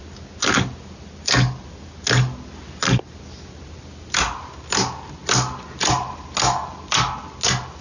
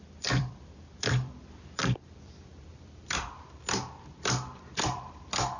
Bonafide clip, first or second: first